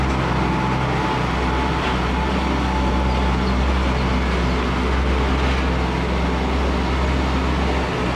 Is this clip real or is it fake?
real